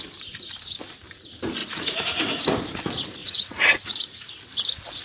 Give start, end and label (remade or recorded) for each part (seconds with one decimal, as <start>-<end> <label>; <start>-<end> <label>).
0.0-1.6 recorded; 1.6-2.4 remade; 2.4-3.2 recorded; 3.2-4.3 remade; 4.3-5.0 recorded